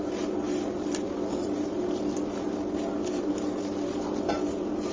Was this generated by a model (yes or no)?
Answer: no